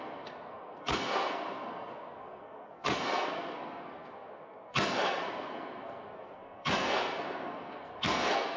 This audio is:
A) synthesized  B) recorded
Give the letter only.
A